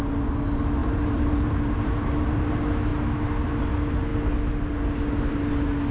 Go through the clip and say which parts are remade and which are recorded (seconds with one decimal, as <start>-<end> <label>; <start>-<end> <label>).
0.0-0.8 recorded; 0.8-2.5 remade; 2.5-5.9 recorded